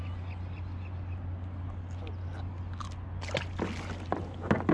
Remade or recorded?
recorded